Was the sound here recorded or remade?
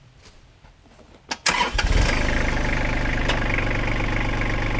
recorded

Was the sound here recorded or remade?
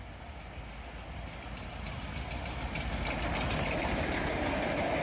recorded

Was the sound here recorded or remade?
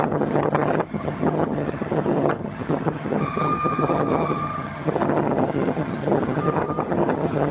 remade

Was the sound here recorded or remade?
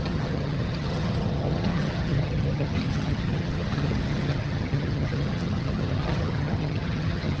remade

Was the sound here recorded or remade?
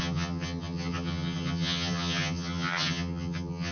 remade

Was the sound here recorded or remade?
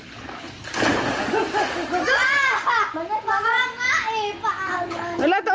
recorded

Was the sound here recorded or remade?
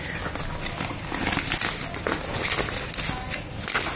recorded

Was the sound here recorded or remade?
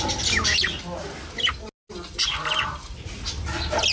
recorded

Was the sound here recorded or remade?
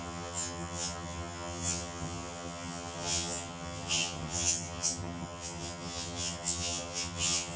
remade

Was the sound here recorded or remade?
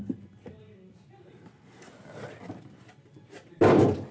recorded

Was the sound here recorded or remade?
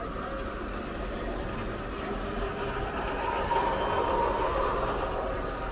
recorded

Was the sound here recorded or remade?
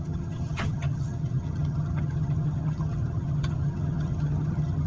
remade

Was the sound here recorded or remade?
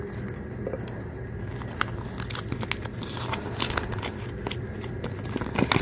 recorded